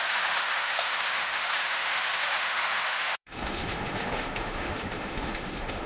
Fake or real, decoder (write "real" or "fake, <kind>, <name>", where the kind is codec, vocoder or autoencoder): fake, autoencoder, DAC-VAE